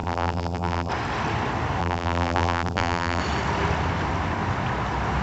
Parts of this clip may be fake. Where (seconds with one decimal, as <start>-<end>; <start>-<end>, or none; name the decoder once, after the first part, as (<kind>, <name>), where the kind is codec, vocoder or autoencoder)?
0.0-0.9 (vocoder, BigVGAN v2); 1.8-3.2